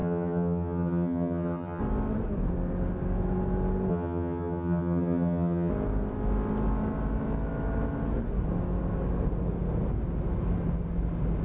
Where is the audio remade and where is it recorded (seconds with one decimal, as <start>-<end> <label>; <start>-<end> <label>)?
0.0-1.8 remade; 1.8-3.9 recorded; 3.9-5.7 remade; 5.7-11.4 recorded